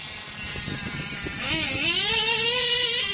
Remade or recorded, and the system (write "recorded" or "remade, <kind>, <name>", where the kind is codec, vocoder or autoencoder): recorded